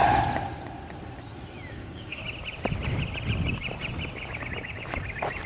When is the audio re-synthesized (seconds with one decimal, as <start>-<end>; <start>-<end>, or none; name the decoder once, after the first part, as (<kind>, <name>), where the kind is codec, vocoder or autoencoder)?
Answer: 1.7-2.2 (codec, DAC)